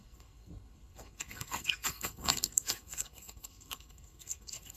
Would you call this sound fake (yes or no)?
yes